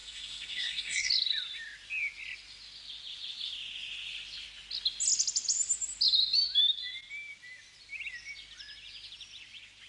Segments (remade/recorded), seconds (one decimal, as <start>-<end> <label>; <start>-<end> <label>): 0.0-1.1 remade; 1.1-9.9 recorded